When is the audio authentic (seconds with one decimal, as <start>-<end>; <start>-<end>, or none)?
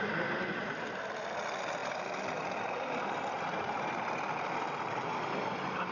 0.0-5.9